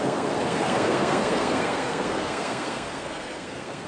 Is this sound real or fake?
fake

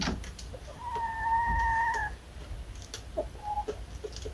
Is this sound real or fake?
real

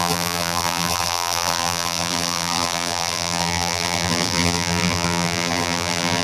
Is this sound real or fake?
fake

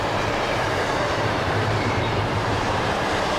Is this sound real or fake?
fake